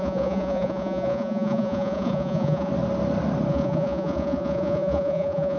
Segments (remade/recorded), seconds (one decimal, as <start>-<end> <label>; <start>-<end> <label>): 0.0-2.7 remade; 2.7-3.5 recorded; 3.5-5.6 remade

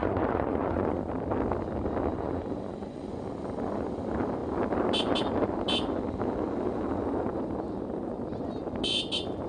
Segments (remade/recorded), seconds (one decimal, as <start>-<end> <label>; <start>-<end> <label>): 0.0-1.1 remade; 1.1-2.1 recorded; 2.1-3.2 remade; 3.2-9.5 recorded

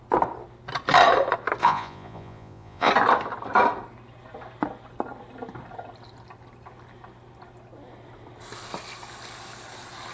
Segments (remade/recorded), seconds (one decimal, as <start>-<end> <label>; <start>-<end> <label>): 0.0-1.6 recorded; 1.6-2.9 remade; 2.9-10.1 recorded